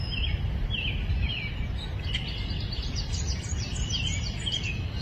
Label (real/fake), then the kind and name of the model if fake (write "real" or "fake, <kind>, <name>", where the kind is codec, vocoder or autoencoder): real